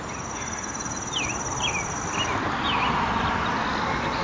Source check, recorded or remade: recorded